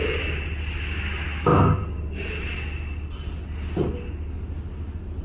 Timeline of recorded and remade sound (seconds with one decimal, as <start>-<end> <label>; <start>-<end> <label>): 0.0-5.2 recorded